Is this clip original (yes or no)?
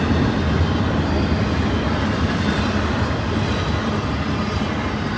yes